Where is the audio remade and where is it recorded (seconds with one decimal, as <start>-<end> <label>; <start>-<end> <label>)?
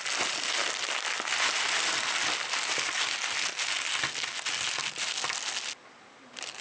0.0-6.6 recorded